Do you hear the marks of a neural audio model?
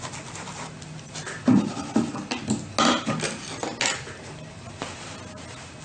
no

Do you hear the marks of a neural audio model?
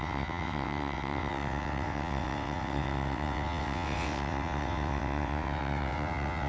yes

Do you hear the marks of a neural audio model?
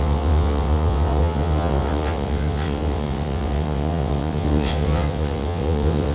yes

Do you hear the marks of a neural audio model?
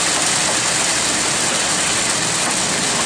no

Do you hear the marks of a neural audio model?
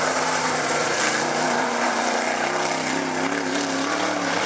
no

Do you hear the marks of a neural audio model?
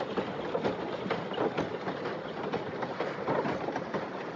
no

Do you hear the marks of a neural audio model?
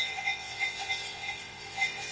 yes